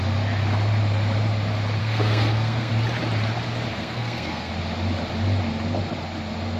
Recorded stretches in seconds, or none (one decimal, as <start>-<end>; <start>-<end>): 0.0-1.8; 2.7-3.7; 4.5-6.6